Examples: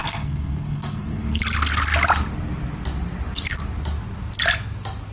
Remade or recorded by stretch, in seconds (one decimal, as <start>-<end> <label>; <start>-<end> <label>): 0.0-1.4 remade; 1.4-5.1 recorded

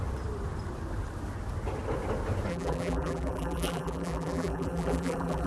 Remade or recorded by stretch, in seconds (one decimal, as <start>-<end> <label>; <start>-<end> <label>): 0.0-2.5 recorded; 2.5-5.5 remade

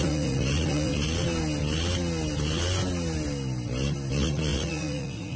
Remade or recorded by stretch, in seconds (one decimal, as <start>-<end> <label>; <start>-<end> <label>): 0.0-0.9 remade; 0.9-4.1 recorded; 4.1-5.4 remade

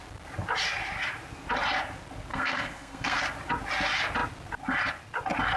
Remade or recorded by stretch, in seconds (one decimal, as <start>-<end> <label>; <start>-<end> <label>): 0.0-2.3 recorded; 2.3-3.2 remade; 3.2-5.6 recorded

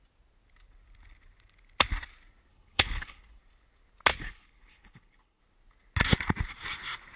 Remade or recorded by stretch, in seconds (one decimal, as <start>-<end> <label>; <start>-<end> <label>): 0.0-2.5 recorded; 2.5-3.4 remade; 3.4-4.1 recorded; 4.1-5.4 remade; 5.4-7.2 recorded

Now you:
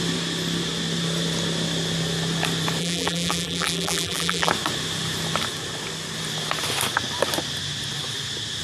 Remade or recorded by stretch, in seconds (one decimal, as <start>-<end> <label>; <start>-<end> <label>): 0.0-2.8 recorded; 2.8-4.5 remade; 4.5-8.6 recorded

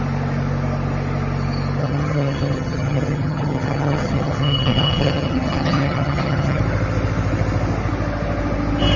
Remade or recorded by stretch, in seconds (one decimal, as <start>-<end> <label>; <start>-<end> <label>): 0.0-1.8 recorded; 1.8-6.6 remade; 6.6-9.0 recorded

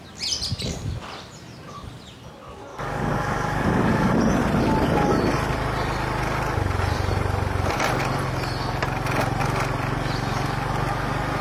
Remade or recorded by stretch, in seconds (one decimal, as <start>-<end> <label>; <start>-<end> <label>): 0.0-2.7 recorded; 2.7-4.1 remade; 4.1-11.4 recorded